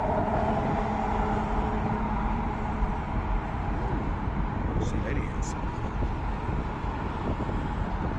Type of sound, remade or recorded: recorded